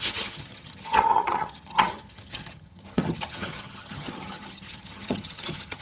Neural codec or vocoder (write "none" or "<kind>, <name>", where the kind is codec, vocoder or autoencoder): vocoder, HiFi-GAN